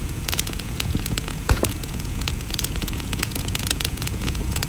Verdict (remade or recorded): remade